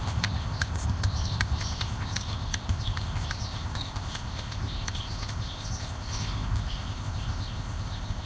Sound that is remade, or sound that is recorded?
remade